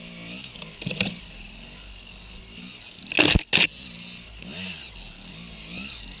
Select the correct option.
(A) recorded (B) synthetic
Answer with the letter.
A